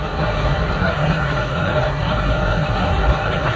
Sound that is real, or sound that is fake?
fake